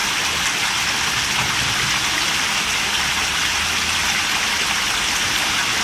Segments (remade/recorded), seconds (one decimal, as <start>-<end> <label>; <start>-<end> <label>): 0.0-5.8 recorded